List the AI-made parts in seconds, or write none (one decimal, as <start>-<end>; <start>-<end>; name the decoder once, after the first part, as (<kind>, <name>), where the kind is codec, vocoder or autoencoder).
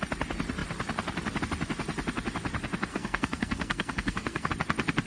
2.9-4.5 (codec, SNAC)